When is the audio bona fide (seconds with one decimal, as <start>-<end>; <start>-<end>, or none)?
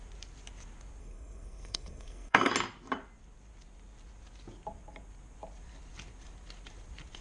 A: 0.0-1.0; 2.5-7.2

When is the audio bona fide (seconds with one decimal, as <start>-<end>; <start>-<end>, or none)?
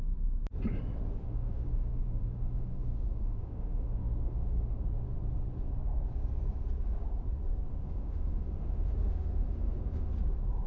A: 0.0-1.2; 4.8-7.7; 10.1-10.7